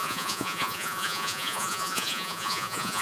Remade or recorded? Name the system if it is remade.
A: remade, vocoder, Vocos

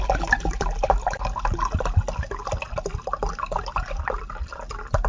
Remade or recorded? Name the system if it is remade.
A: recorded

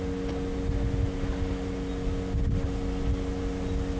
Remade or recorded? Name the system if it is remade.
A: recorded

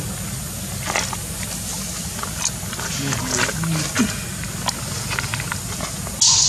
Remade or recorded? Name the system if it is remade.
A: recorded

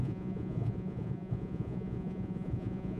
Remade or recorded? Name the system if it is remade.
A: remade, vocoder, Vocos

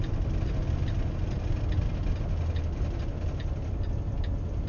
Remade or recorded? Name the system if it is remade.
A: recorded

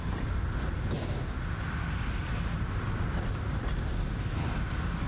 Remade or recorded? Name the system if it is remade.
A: recorded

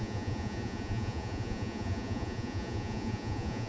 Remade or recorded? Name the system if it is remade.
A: remade, vocoder, Vocos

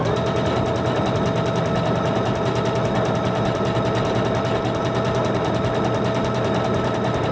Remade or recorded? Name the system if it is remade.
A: recorded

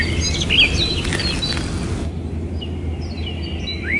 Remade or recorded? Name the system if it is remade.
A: recorded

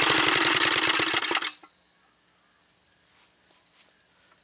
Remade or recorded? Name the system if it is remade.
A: recorded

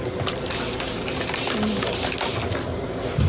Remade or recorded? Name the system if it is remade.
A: recorded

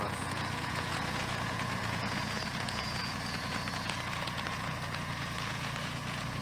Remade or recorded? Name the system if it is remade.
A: remade, vocoder, Vocos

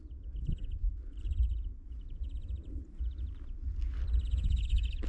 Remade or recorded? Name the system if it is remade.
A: recorded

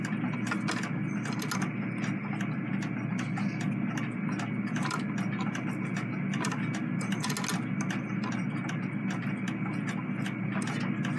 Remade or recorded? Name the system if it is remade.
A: recorded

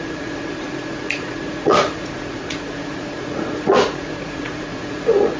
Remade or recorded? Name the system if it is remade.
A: remade, vocoder, Vocos